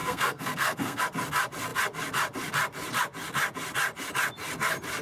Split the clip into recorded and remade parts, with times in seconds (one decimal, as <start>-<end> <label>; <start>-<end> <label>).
0.0-1.0 remade; 1.0-5.0 recorded